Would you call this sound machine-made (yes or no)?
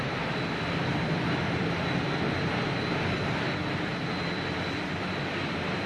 no